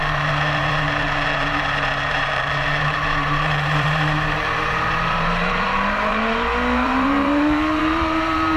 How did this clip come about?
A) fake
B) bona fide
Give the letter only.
A